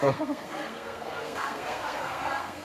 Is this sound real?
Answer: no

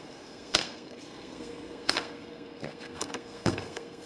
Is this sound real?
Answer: no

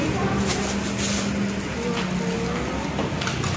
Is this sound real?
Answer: yes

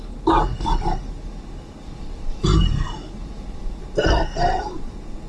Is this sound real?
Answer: yes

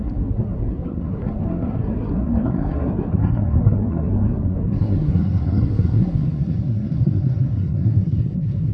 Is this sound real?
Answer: no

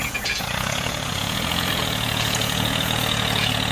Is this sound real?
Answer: no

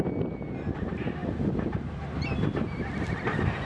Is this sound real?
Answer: yes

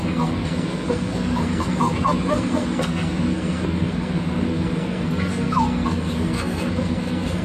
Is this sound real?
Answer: no